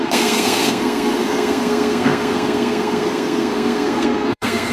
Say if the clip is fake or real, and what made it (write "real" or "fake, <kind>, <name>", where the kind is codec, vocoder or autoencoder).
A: fake, codec, SNAC